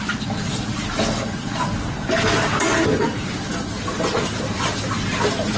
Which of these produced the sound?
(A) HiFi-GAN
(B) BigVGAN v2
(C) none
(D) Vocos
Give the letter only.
C